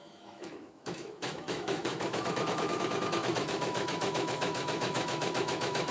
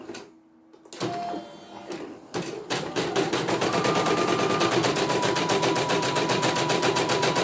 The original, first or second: second